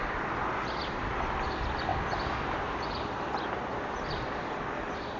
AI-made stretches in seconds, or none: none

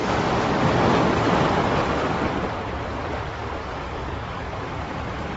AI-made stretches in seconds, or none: 3.6-4.6 (codec, DAC)

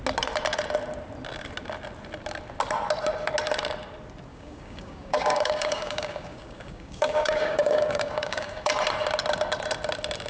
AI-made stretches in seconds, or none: 4.3-8.7 (codec, DAC)

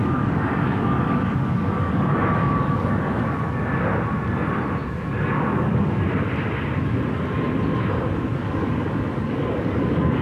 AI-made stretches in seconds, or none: 0.0-3.6 (codec, DAC); 4.8-5.9; 8.3-10.2

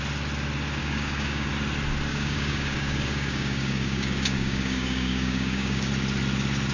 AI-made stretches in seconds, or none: 0.8-1.5 (codec, DAC); 2.1-5.9